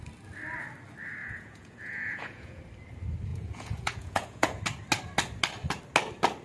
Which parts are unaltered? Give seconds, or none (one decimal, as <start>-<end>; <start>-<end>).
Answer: 0.0-1.2; 2.6-3.3; 4.6-6.4